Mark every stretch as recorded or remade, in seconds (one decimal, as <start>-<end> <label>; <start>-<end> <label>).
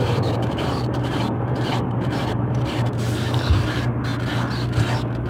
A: 0.0-4.1 remade; 4.1-5.3 recorded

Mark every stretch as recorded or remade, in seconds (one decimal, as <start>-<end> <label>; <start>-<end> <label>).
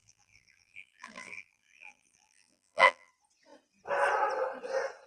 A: 0.0-3.1 remade; 3.1-5.1 recorded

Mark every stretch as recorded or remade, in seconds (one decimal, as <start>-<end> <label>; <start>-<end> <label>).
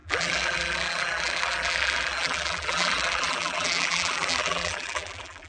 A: 0.0-5.5 remade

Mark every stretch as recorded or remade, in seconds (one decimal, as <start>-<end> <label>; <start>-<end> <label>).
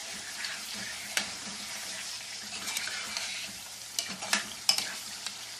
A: 0.0-2.8 remade; 2.8-3.3 recorded; 3.3-3.9 remade; 3.9-5.6 recorded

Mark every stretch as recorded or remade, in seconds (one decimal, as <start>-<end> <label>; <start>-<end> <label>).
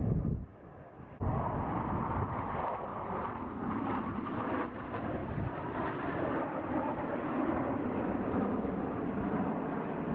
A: 0.0-2.9 recorded; 2.9-4.2 remade; 4.2-5.2 recorded; 5.2-8.4 remade; 8.4-10.1 recorded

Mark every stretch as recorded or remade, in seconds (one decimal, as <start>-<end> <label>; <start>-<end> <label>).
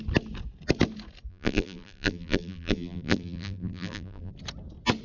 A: 0.0-1.3 recorded; 1.3-4.3 remade; 4.3-5.0 recorded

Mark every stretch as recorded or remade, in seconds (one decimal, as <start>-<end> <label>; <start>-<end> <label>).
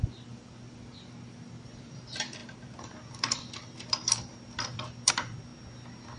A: 0.0-5.5 remade; 5.5-6.2 recorded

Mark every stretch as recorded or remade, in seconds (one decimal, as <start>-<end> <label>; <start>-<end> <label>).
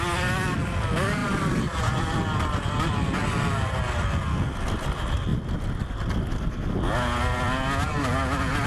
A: 0.0-1.2 recorded; 1.2-2.2 remade; 2.2-5.3 recorded; 5.3-6.2 remade; 6.2-8.7 recorded